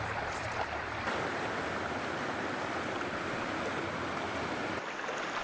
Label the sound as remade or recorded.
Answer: recorded